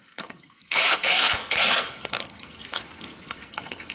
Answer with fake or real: fake